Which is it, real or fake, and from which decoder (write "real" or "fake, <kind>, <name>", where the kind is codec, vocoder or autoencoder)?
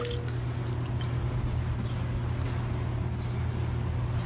real